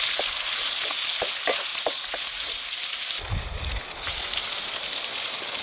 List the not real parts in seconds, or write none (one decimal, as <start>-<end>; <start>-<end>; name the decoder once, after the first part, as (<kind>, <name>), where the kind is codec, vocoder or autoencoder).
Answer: none